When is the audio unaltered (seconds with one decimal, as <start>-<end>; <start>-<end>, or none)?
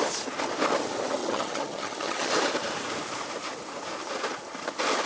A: 0.0-1.2; 2.3-5.1